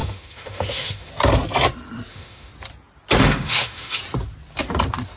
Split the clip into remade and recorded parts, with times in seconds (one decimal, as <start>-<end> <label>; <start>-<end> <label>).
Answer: 0.0-1.1 remade; 1.1-2.1 recorded; 2.1-2.5 remade; 2.5-3.2 recorded; 3.2-4.0 remade; 4.0-5.2 recorded